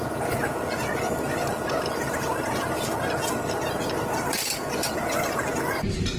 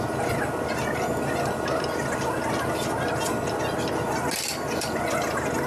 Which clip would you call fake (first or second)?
first